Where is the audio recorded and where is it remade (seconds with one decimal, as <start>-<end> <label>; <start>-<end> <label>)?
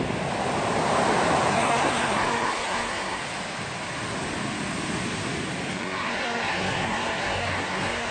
0.0-1.5 recorded; 1.5-3.2 remade; 3.2-5.7 recorded; 5.7-8.1 remade